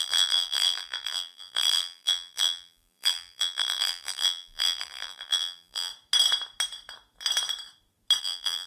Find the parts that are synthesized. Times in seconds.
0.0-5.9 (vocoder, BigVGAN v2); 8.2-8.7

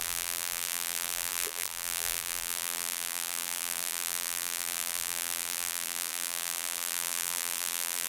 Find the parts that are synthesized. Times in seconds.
0.0-8.1 (vocoder, BigVGAN v2)

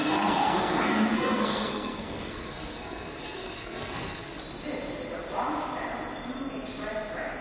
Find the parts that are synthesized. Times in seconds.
0.0-4.4 (codec, SNAC)

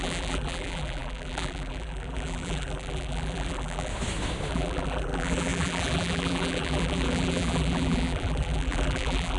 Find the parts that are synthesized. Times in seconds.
0.0-3.9 (vocoder, BigVGAN v2); 4.5-9.4

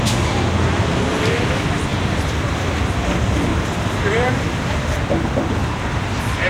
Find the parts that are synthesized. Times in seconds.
1.9-2.8 (vocoder, BigVGAN v2); 3.5-4.3; 5.6-6.1

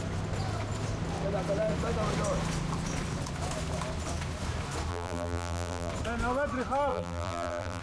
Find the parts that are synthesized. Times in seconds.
4.9-5.9 (vocoder, BigVGAN v2); 6.9-7.8

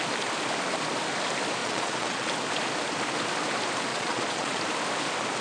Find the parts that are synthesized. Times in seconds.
1.6-2.3 (vocoder, Vocos); 3.9-4.6